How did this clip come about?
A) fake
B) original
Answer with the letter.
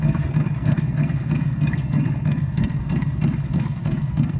A